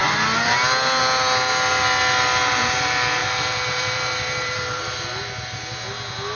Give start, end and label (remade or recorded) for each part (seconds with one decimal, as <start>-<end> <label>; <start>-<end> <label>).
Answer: 0.0-3.2 recorded; 3.2-4.8 remade; 4.8-6.3 recorded